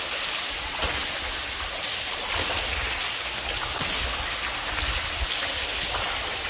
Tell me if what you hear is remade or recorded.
recorded